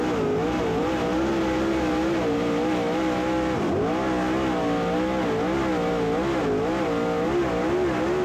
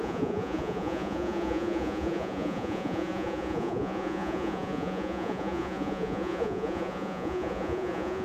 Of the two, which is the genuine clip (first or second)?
first